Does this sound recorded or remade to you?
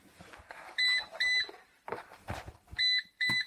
remade